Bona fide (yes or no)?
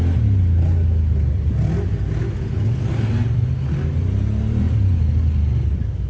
yes